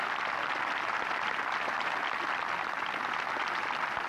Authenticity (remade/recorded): recorded